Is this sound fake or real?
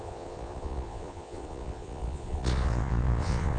fake